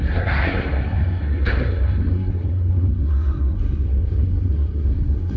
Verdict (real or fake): fake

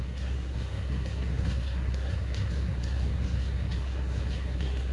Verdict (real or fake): fake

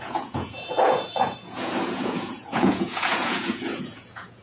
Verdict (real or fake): fake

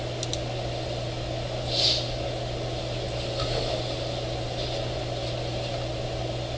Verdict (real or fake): real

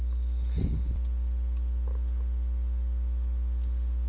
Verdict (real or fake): real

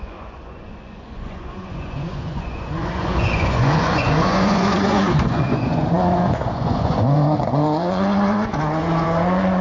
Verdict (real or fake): fake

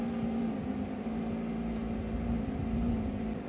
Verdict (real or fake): real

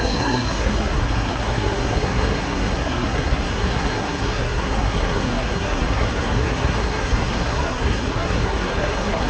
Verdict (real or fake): fake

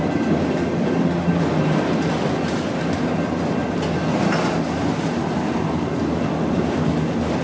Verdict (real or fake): real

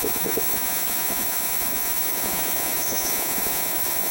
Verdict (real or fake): fake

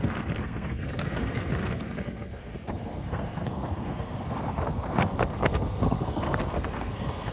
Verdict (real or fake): fake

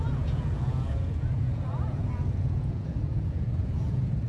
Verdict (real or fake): fake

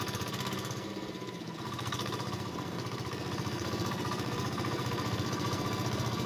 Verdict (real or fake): fake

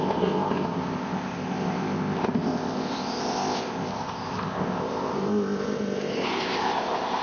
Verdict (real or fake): fake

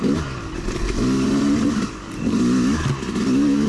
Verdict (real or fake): real